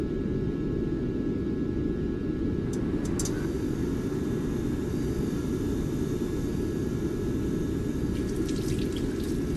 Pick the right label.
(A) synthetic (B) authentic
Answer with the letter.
B